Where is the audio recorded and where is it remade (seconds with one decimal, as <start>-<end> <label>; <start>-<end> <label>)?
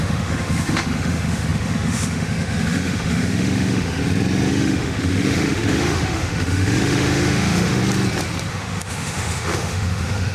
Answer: 0.0-4.0 remade; 4.0-4.5 recorded; 4.5-7.8 remade; 7.8-8.5 recorded; 8.5-10.3 remade